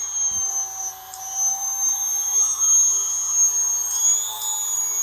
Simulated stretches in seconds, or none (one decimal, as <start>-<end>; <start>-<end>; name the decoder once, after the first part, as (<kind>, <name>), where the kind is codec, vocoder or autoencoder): 1.5-2.4 (autoencoder, DAC-VAE)